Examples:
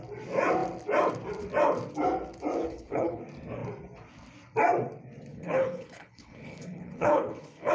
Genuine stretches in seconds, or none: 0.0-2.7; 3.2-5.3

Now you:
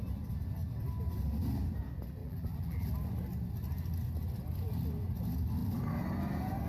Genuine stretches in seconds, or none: 0.0-2.2; 2.9-6.7

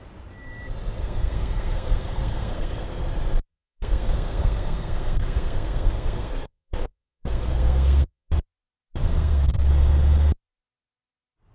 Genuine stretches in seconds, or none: 0.0-1.0; 3.0-3.5; 8.3-9.0; 9.7-11.5

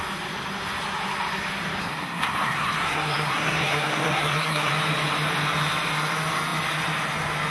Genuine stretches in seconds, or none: 0.0-1.8; 4.7-7.5

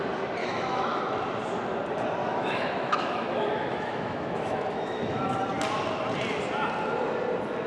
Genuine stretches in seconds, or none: 0.0-0.4; 1.0-2.2; 5.4-7.7

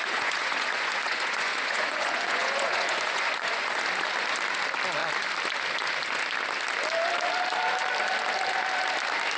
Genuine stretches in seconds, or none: 3.8-9.4